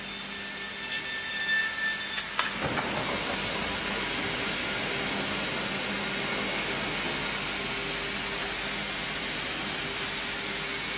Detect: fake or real real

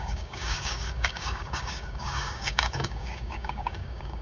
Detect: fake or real fake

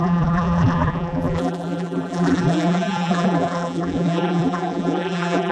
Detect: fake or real fake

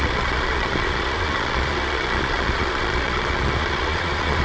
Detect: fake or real fake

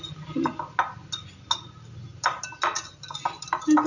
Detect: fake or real real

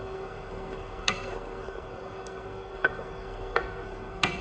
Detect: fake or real fake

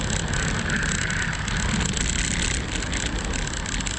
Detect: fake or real real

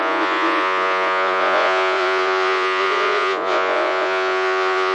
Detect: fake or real fake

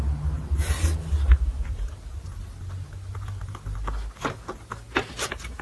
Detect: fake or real real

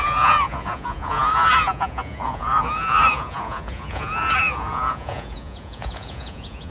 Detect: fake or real fake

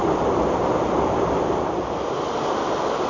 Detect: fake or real real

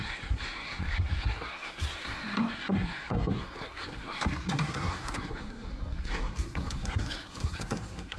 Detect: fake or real fake